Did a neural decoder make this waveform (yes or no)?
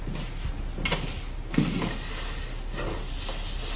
no